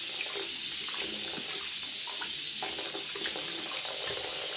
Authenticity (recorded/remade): recorded